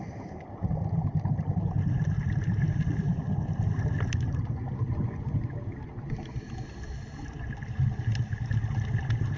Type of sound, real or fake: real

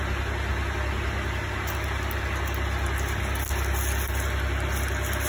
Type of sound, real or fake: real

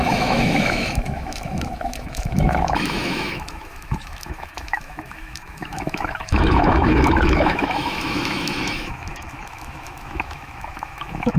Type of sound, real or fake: fake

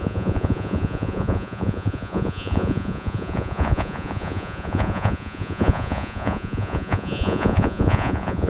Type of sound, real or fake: fake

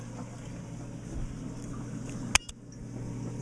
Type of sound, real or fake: real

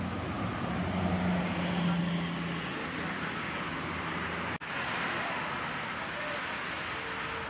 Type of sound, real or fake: real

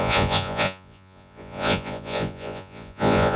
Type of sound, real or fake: fake